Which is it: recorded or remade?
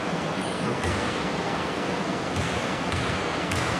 remade